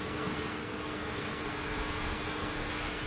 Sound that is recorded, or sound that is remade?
remade